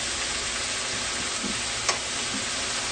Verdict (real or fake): real